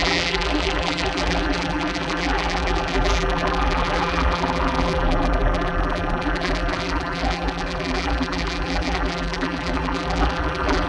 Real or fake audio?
fake